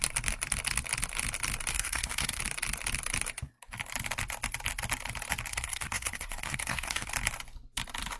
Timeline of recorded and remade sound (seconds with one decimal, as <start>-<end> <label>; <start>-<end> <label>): 0.0-1.7 recorded; 1.7-2.4 remade; 2.4-5.5 recorded; 5.5-7.1 remade; 7.1-8.2 recorded